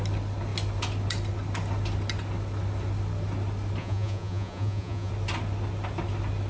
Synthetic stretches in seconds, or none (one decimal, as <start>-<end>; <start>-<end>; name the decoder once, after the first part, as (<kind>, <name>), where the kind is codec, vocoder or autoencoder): 3.8-5.1 (vocoder, Vocos)